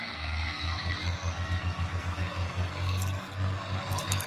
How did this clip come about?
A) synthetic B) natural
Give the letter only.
A